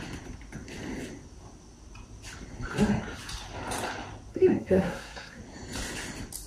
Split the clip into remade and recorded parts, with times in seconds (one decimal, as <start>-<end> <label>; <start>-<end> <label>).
0.0-4.3 recorded; 4.3-5.4 remade; 5.4-6.5 recorded